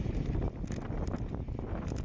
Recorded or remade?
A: recorded